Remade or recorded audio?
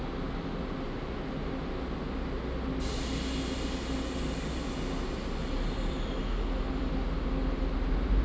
recorded